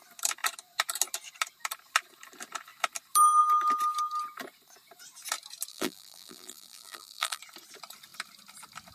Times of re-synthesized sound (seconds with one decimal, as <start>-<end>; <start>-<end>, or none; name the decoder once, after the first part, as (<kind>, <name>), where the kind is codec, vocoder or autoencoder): 5.7-7.4 (vocoder, BigVGAN v2)